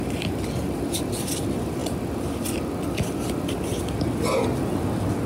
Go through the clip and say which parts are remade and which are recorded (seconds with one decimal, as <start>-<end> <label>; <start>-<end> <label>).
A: 0.0-5.3 recorded